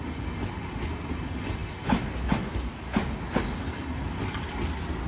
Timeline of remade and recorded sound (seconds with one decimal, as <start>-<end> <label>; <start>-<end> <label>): 0.0-5.1 recorded